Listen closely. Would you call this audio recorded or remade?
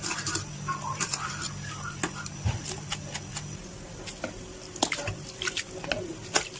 recorded